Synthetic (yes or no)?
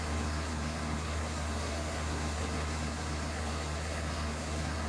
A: yes